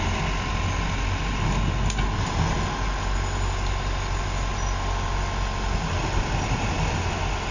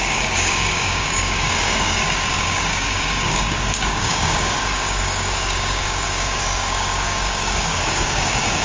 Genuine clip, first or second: first